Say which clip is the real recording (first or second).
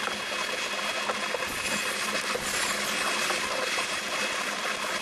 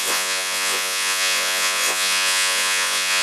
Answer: first